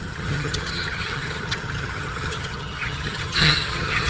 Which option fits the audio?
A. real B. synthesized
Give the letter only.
B